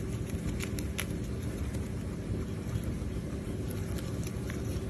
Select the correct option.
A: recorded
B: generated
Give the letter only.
A